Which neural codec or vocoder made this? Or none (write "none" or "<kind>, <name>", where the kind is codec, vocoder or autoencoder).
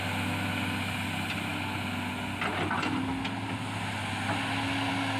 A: none